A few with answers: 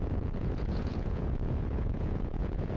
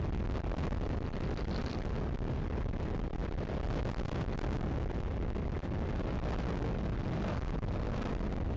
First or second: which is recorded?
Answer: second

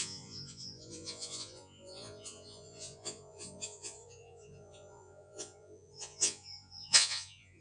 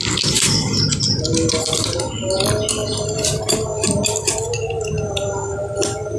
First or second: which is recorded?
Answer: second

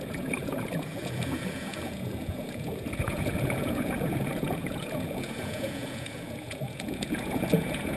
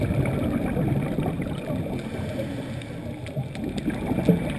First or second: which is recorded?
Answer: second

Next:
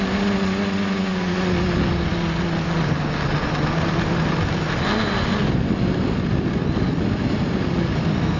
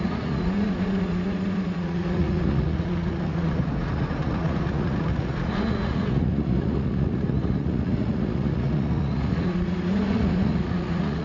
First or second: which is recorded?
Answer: first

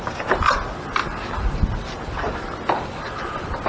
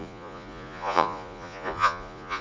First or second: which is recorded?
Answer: first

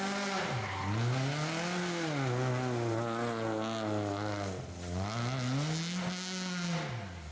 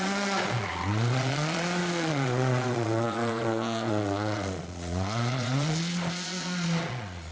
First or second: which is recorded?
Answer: first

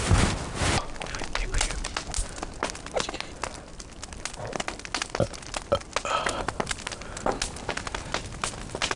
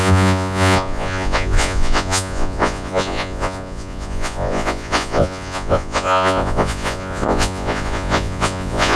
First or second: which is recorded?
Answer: first